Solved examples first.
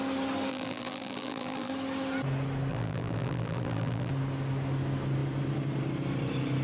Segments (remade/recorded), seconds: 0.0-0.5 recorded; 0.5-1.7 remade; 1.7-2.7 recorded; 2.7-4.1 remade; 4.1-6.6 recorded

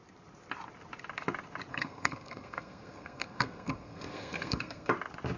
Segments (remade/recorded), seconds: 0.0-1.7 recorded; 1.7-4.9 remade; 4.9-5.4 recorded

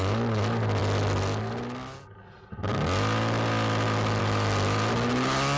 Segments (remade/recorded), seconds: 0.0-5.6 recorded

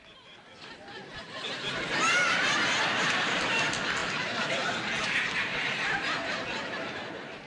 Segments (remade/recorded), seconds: 0.0-1.1 recorded; 1.1-2.4 remade; 2.4-5.5 recorded; 5.5-6.0 remade; 6.0-7.5 recorded